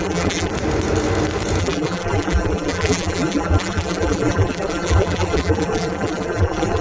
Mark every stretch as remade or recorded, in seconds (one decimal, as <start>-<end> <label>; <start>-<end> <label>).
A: 0.0-0.5 remade; 0.5-1.6 recorded; 1.6-6.8 remade

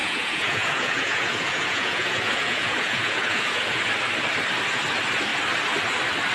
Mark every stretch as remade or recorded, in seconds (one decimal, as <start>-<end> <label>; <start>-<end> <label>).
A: 0.0-3.8 remade; 3.8-6.3 recorded

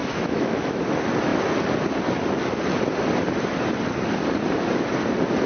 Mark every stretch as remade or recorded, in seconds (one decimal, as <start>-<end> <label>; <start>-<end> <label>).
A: 0.0-0.8 remade; 0.8-5.5 recorded

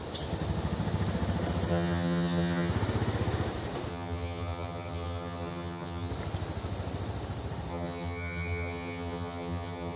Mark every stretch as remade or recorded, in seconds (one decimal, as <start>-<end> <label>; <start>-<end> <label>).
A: 0.0-1.7 recorded; 1.7-2.7 remade; 2.7-3.9 recorded; 3.9-6.1 remade; 6.1-7.7 recorded; 7.7-10.0 remade

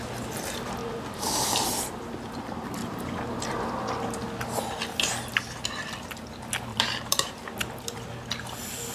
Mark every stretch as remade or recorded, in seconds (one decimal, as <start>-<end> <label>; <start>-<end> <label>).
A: 0.0-0.8 recorded; 0.8-1.5 remade; 1.5-2.8 recorded; 2.8-3.5 remade; 3.5-6.7 recorded; 6.7-7.3 remade; 7.3-8.9 recorded

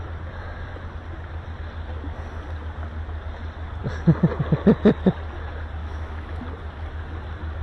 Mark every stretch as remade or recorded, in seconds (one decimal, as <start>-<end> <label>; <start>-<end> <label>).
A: 0.0-5.8 recorded; 5.8-6.4 remade; 6.4-7.6 recorded

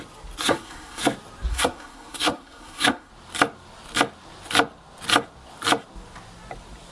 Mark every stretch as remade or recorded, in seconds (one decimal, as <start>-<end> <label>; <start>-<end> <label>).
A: 0.0-0.5 recorded; 0.5-1.0 remade; 1.0-1.5 recorded; 1.5-3.1 remade; 3.1-6.9 recorded

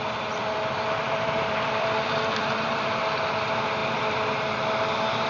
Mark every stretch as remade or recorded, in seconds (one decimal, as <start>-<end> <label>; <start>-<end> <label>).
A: 0.0-0.4 recorded; 0.4-3.0 remade; 3.0-3.8 recorded; 3.8-4.3 remade; 4.3-5.3 recorded